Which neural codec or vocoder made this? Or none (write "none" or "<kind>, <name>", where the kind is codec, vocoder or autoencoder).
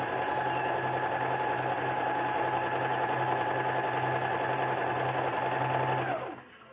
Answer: none